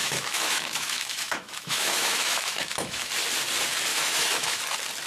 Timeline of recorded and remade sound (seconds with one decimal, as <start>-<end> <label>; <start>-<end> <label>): 0.0-3.1 remade; 3.1-3.9 recorded; 3.9-4.6 remade; 4.6-5.1 recorded